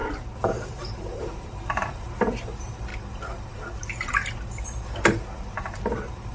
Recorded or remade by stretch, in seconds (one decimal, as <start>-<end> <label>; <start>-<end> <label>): 0.0-2.9 remade; 2.9-5.8 recorded; 5.8-6.3 remade